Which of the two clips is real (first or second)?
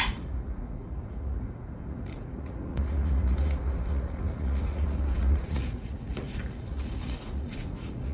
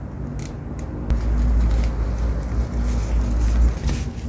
second